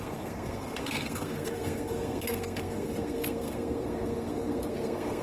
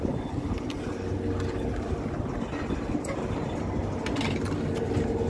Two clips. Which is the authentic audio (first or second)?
second